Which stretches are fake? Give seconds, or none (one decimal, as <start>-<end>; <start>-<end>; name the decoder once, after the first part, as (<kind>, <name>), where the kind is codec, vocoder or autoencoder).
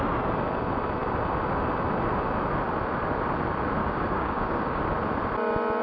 3.8-4.8 (codec, DAC)